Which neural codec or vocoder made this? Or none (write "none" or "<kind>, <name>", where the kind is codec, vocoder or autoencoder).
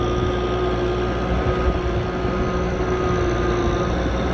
none